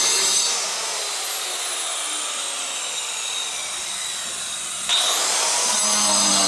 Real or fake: real